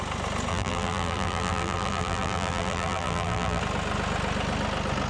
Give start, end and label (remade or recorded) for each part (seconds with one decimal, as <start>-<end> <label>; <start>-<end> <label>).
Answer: 0.0-0.5 recorded; 0.5-3.6 remade; 3.6-5.1 recorded